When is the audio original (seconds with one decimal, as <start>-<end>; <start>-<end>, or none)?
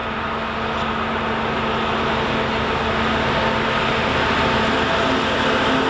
0.0-5.9